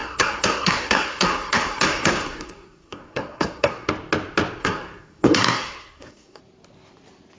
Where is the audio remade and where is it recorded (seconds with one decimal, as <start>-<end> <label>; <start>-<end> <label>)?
0.0-3.9 remade; 3.9-4.6 recorded; 4.6-6.4 remade; 6.4-7.4 recorded